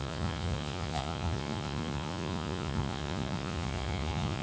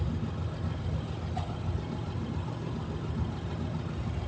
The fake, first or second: first